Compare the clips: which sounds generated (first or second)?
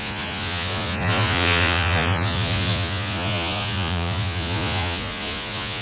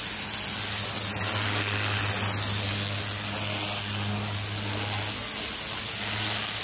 first